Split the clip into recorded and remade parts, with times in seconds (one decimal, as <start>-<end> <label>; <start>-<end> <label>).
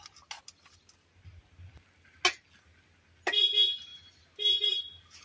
0.0-5.2 recorded